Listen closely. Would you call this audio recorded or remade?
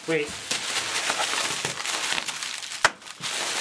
recorded